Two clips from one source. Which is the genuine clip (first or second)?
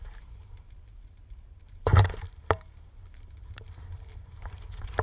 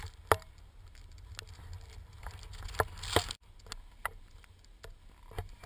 second